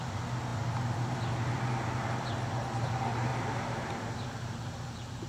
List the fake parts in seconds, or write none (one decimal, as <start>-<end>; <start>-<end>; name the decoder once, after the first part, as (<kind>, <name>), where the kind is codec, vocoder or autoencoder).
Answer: 3.3-5.3 (vocoder, BigVGAN v2)